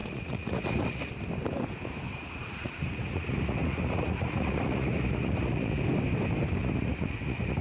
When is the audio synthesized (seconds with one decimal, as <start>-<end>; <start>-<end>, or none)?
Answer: 0.0-1.1; 2.1-5.8; 6.6-7.6

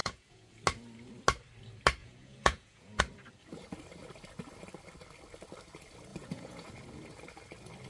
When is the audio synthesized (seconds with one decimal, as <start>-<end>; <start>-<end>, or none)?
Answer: 0.0-0.5; 2.0-3.0; 6.1-6.7